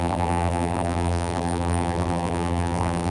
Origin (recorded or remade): remade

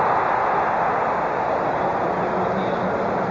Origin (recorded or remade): recorded